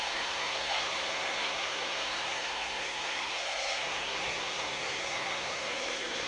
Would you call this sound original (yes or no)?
no